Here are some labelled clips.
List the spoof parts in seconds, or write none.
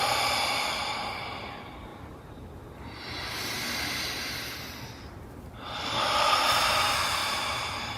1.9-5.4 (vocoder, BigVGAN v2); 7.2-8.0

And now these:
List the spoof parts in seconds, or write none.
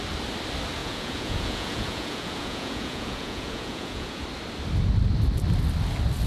0.8-4.2 (vocoder, Vocos)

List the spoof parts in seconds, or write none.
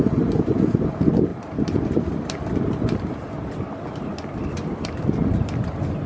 1.3-3.5 (vocoder, BigVGAN v2)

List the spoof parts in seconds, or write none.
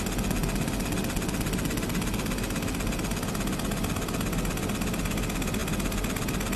none